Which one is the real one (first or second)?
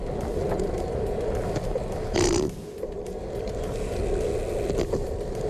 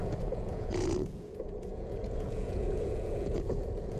first